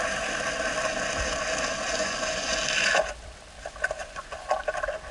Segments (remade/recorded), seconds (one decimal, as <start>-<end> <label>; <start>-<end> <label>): 0.0-2.0 recorded; 2.0-2.6 remade; 2.6-4.0 recorded; 4.0-4.6 remade; 4.6-5.1 recorded